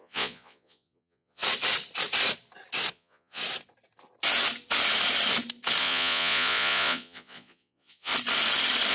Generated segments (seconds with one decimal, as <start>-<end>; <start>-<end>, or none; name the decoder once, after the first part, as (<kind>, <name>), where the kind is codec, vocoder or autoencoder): 0.0-1.4 (vocoder, Vocos); 2.9-3.4; 5.8-8.1